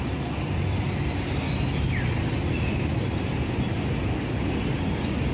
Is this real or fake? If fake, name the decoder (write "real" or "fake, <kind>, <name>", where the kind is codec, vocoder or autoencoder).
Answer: real